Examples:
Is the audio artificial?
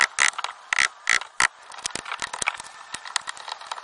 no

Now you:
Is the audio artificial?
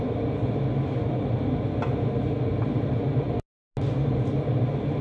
no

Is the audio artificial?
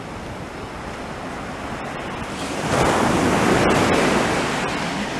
no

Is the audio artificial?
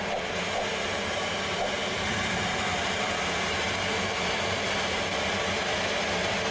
no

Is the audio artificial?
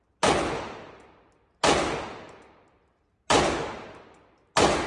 no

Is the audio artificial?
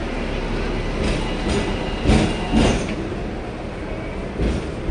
no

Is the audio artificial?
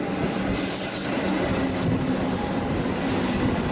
no